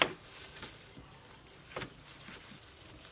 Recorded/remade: recorded